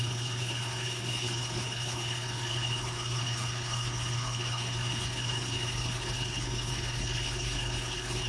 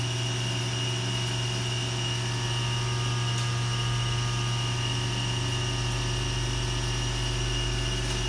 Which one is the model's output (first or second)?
first